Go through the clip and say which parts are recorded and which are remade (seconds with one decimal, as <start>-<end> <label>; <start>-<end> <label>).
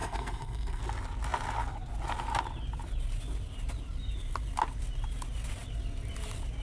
0.0-0.8 remade; 0.8-6.6 recorded